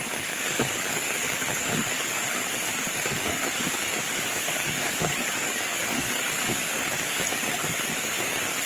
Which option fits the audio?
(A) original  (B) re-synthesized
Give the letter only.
B